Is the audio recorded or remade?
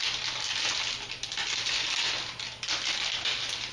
recorded